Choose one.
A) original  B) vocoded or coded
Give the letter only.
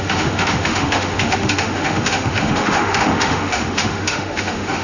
B